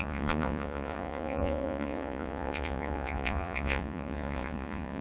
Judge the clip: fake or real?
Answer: fake